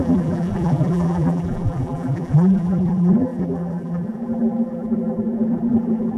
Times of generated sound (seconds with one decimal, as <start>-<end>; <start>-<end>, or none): 0.0-6.2